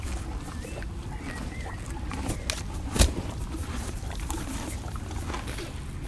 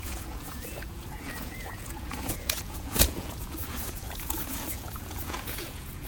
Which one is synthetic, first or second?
second